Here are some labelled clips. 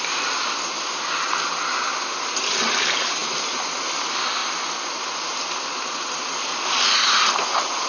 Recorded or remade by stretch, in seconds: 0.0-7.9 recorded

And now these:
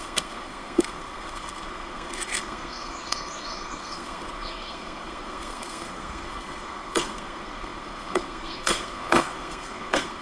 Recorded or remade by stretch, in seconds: 0.0-10.2 remade

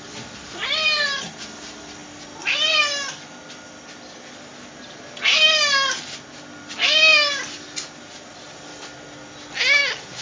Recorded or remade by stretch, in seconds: 0.0-10.2 recorded

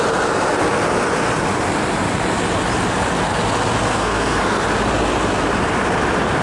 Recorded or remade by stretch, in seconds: 0.0-3.9 recorded; 3.9-4.6 remade; 4.6-6.4 recorded

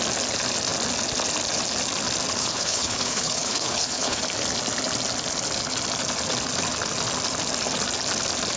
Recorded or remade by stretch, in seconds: 0.0-2.4 recorded; 2.4-4.2 remade; 4.2-8.6 recorded

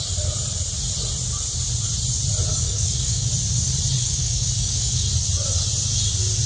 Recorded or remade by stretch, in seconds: 0.0-2.5 recorded; 2.5-3.3 remade; 3.3-4.0 recorded; 4.0-5.1 remade; 5.1-6.5 recorded

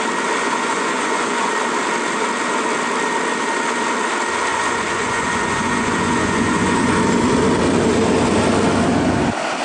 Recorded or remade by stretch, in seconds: 0.0-0.4 recorded; 0.4-1.5 remade; 1.5-4.5 recorded; 4.5-7.0 remade; 7.0-9.6 recorded

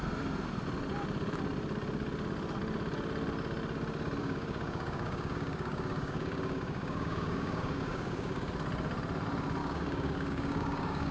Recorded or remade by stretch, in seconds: 0.0-4.2 recorded; 4.2-8.5 remade; 8.5-9.6 recorded; 9.6-11.1 remade